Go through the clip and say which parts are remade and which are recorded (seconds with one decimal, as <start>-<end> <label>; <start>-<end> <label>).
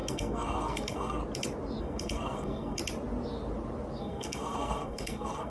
0.0-1.2 remade; 1.2-1.8 recorded; 1.8-2.8 remade; 2.8-4.0 recorded; 4.0-5.5 remade